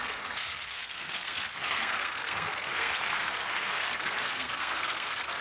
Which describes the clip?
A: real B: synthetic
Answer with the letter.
B